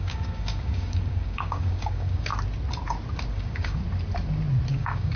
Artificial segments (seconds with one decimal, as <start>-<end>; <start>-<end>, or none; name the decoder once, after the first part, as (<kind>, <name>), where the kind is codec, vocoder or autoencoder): 0.0-2.3 (codec, DAC); 3.3-3.8; 4.7-5.2